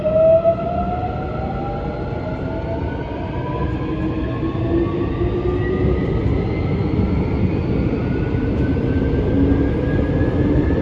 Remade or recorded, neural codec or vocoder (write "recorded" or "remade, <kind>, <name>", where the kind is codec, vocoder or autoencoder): recorded